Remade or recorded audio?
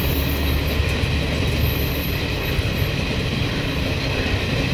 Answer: recorded